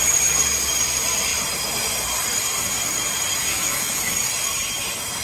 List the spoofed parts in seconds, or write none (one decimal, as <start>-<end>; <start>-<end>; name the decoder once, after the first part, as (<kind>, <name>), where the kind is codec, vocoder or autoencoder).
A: 3.5-4.3 (autoencoder, DAC-VAE)